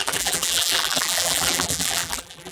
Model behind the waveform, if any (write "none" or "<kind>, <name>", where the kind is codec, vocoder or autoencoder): vocoder, BigVGAN v2